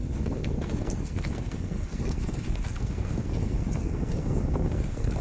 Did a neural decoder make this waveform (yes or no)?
yes